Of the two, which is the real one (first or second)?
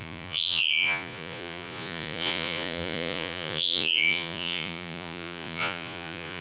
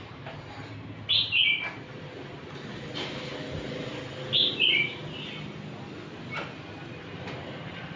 second